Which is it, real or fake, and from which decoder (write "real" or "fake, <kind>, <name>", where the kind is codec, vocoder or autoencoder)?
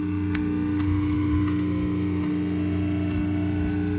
fake, autoencoder, DAC-VAE